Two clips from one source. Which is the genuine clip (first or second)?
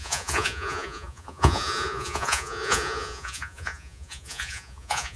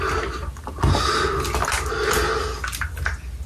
second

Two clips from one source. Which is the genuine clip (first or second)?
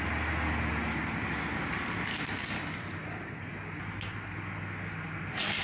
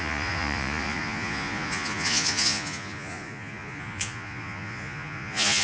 first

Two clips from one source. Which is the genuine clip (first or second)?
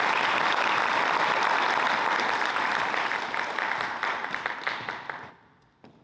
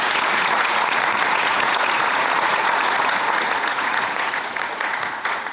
first